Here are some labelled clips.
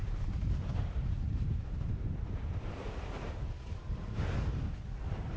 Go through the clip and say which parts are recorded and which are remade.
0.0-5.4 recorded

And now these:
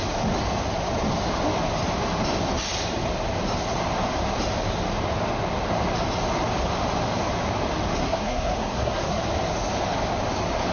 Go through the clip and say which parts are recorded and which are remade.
0.0-8.0 recorded; 8.0-9.2 remade; 9.2-10.7 recorded

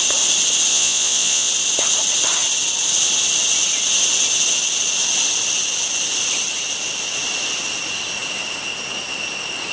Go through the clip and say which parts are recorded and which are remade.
0.0-0.7 recorded; 0.7-1.5 remade; 1.5-9.7 recorded

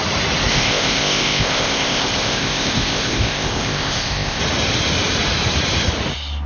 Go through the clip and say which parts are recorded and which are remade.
0.0-0.5 recorded; 0.5-4.4 remade; 4.4-6.5 recorded

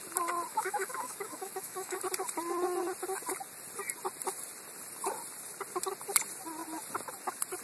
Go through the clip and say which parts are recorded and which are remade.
0.0-0.5 recorded; 0.5-2.0 remade; 2.0-7.6 recorded